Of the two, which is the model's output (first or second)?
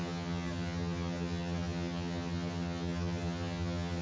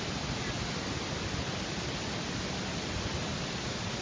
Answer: first